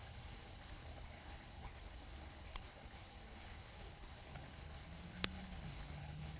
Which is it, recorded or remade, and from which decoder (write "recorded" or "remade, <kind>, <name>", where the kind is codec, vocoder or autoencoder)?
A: remade, codec, HILCodec